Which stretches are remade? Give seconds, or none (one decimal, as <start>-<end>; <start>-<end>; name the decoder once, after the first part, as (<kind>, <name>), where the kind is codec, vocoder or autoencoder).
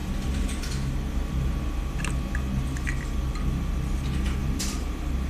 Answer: 0.0-0.6 (vocoder, BigVGAN v2); 4.4-5.3